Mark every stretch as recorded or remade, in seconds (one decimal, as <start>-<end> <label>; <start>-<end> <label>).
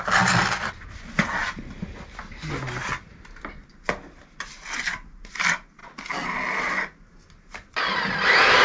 0.0-8.6 recorded